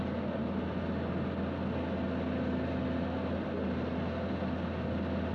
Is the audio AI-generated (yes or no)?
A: no